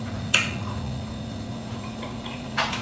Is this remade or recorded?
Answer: remade